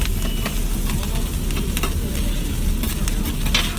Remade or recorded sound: recorded